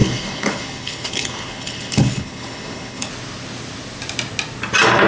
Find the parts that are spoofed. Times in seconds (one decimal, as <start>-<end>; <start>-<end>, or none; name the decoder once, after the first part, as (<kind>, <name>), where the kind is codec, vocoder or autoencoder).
0.0-3.1 (codec, HILCodec)